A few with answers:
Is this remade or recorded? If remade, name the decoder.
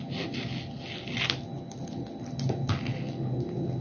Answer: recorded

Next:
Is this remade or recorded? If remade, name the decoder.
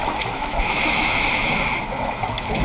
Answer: remade, autoencoder, DAC-VAE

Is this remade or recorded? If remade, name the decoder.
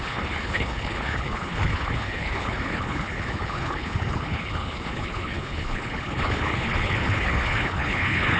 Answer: remade, codec, HILCodec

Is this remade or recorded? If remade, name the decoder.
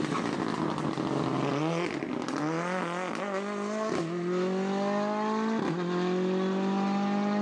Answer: recorded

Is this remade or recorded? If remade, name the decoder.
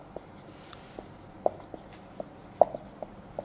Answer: recorded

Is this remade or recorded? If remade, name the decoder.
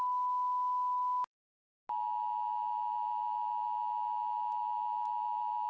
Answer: recorded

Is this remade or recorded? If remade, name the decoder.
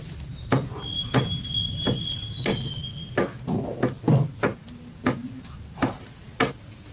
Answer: recorded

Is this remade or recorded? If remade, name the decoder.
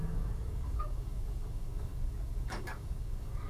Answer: remade, codec, DAC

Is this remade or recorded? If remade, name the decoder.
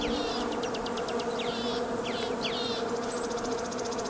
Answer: recorded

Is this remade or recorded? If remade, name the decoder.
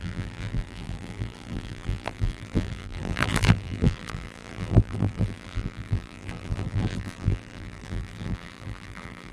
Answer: remade, vocoder, BigVGAN v2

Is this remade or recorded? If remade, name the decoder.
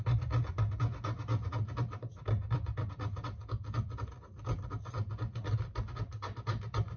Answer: recorded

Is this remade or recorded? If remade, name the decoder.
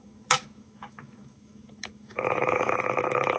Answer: remade, autoencoder, DAC-VAE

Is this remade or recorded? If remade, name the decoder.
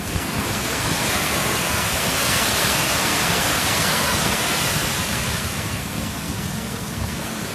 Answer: remade, codec, SNAC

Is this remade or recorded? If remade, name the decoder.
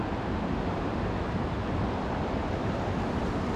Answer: recorded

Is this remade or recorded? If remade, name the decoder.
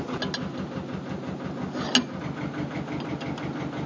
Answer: recorded